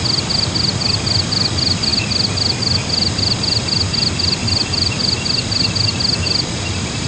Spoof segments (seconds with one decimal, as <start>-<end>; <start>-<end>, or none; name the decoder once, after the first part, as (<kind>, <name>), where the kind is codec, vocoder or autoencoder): none